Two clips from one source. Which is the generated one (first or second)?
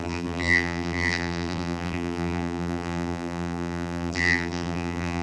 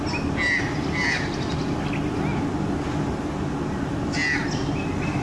first